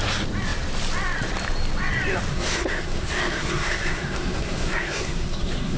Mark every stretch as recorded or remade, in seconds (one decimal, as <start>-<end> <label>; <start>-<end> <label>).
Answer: 0.0-2.3 recorded; 2.3-5.8 remade